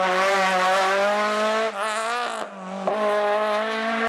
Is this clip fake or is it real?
real